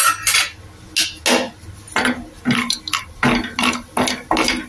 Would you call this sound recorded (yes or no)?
yes